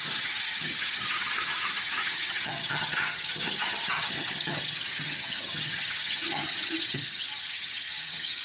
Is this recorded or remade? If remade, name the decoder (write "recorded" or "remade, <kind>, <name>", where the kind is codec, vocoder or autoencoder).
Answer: remade, vocoder, HiFi-GAN